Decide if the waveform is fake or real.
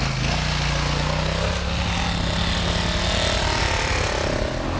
real